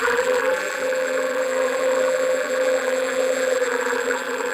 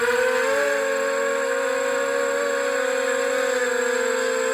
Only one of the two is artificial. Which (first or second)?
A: first